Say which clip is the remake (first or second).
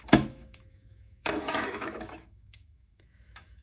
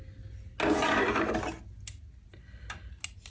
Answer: first